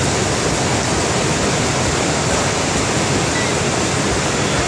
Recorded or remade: recorded